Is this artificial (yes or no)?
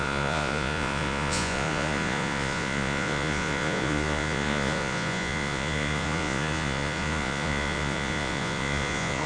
yes